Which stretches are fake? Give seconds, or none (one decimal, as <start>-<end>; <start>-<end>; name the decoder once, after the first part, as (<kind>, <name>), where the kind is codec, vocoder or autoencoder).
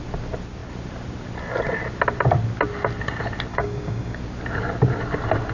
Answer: 3.5-4.2 (codec, DAC)